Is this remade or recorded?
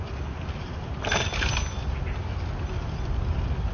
recorded